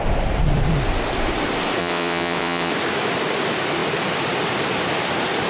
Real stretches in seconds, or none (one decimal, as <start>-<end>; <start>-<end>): 0.0-1.8; 2.7-5.5